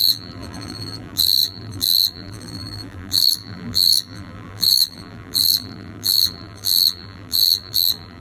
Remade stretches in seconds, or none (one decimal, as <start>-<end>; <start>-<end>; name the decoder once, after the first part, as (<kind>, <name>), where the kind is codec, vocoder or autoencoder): 0.0-8.2 (vocoder, BigVGAN v2)